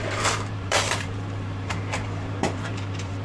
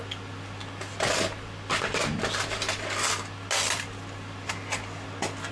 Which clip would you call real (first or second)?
second